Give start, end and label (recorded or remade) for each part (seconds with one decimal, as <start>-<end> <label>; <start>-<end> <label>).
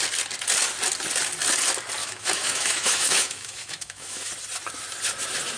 0.0-2.0 recorded; 2.0-4.3 remade; 4.3-5.6 recorded